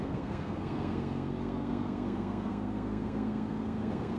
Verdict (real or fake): fake